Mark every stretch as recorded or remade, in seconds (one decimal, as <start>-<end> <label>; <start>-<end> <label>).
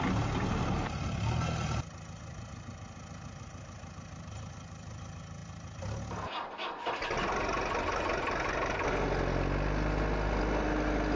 0.0-11.2 recorded